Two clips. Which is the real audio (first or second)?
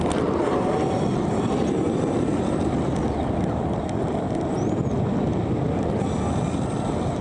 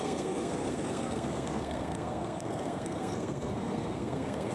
first